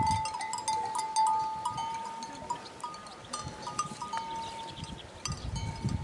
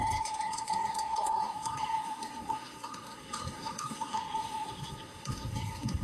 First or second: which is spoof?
second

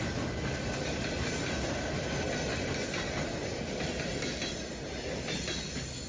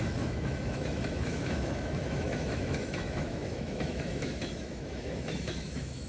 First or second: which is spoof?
second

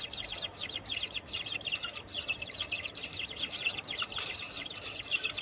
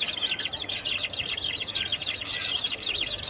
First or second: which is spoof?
first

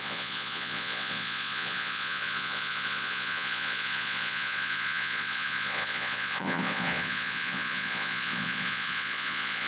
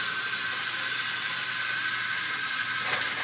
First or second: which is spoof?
first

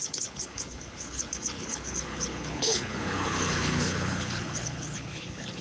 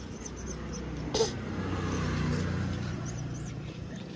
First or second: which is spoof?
first